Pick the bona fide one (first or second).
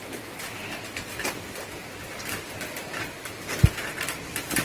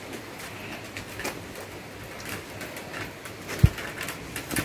second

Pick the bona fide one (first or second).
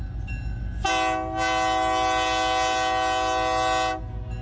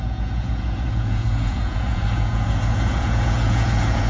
first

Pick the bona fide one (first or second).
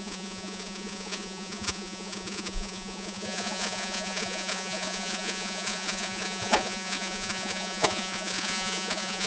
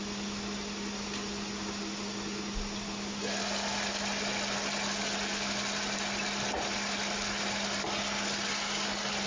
second